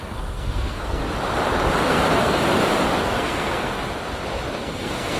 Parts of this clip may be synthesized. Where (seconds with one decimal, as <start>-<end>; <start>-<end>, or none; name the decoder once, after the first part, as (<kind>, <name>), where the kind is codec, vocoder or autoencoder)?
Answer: 0.0-1.0 (codec, SNAC); 1.8-2.4; 3.0-3.8; 4.6-5.2